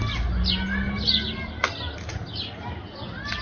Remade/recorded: recorded